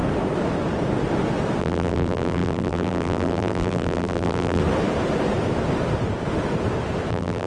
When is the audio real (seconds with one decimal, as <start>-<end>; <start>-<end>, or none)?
0.0-1.6; 4.6-7.1